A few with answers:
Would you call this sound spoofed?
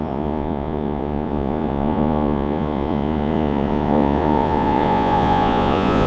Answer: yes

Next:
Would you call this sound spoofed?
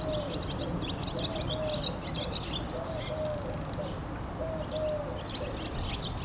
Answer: no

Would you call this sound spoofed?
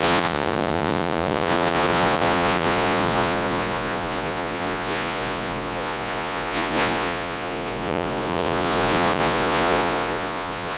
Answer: yes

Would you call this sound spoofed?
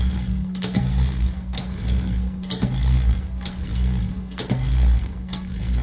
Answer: yes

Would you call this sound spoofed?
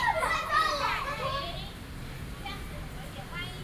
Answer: no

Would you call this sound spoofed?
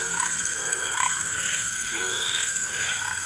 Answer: yes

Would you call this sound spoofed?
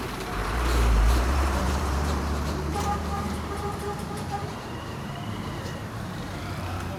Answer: yes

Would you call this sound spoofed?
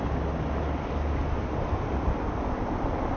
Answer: no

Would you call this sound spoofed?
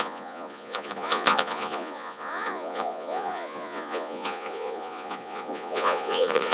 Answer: yes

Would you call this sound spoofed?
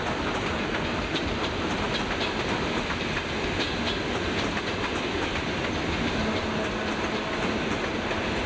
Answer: no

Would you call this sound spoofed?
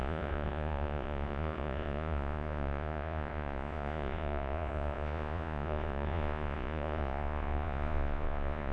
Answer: yes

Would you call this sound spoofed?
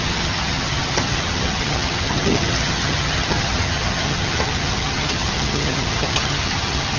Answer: yes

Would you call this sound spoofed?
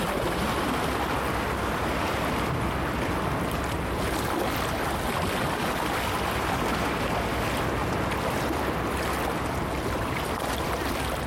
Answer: no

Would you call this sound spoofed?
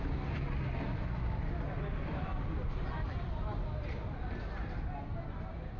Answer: no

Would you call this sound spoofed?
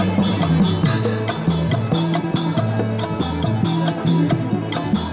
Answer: no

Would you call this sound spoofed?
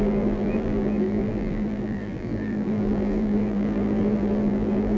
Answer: yes